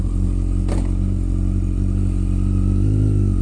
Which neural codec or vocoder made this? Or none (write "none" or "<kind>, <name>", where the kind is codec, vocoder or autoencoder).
none